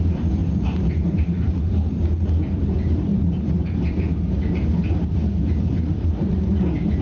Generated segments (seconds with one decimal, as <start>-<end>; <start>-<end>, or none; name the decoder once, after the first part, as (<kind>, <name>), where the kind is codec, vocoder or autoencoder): 0.4-1.9 (vocoder, BigVGAN v2); 3.1-3.9